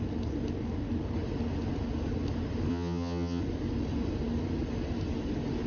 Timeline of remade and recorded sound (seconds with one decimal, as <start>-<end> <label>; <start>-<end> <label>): 0.0-2.7 recorded; 2.7-3.4 remade; 3.4-5.7 recorded

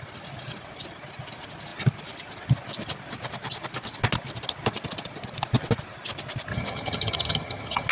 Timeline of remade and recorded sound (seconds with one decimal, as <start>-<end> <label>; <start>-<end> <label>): 0.0-6.5 recorded; 6.5-7.9 remade

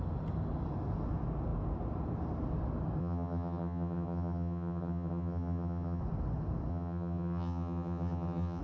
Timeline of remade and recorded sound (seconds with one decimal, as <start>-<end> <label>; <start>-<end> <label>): 0.0-3.0 recorded; 3.0-6.0 remade; 6.0-6.7 recorded; 6.7-8.6 remade

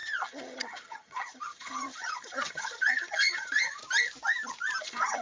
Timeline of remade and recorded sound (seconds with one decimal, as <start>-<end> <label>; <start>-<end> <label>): 0.0-3.8 remade; 3.8-4.8 recorded; 4.8-5.2 remade